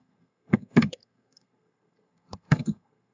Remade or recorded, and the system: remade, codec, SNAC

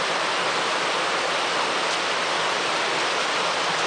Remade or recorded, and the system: recorded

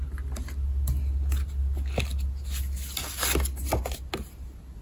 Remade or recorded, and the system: recorded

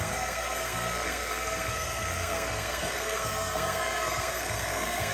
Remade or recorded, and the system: remade, codec, SNAC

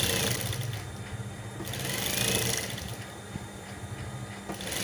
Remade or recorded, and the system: recorded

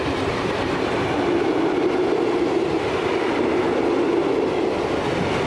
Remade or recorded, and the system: recorded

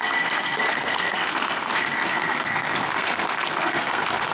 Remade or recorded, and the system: remade, codec, SNAC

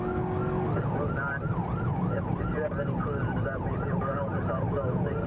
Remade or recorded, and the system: recorded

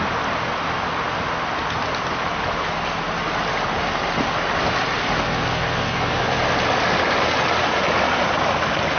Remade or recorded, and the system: recorded